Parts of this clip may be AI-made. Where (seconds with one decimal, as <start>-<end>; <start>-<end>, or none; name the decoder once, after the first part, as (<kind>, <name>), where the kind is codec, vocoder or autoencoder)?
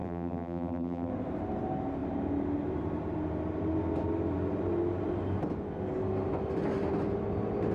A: 0.0-1.1 (vocoder, BigVGAN v2)